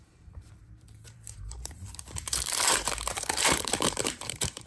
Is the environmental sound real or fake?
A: fake